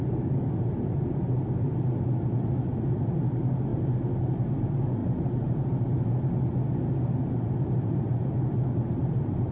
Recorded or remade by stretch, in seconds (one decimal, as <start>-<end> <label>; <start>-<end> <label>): 0.0-9.5 recorded